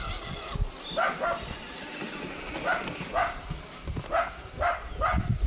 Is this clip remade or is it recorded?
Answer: recorded